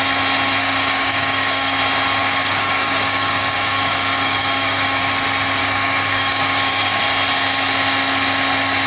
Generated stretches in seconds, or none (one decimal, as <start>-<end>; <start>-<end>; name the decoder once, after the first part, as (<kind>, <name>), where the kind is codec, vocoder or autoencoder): 0.6-1.8 (codec, DAC); 2.2-5.0; 5.6-7.0